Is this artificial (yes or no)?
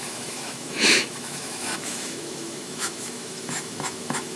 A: yes